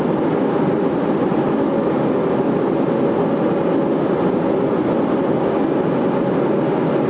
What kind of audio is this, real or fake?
real